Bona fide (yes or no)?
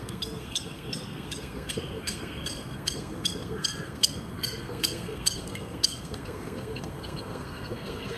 no